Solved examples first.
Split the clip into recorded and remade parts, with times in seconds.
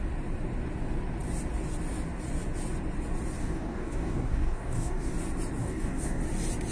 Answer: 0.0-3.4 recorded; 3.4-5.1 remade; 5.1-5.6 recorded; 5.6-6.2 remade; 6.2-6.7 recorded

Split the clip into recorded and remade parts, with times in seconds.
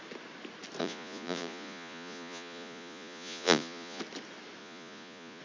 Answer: 0.0-0.8 recorded; 0.8-4.0 remade; 4.0-4.6 recorded; 4.6-5.4 remade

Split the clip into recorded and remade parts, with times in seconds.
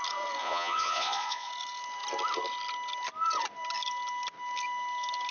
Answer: 0.0-0.4 recorded; 0.4-1.5 remade; 1.5-5.3 recorded